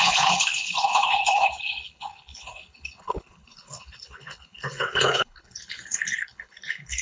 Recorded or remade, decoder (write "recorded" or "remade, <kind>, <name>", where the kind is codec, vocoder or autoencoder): remade, codec, HILCodec